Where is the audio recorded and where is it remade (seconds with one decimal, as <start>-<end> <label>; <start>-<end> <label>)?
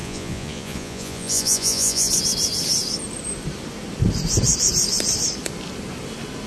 0.0-2.1 remade; 2.1-6.5 recorded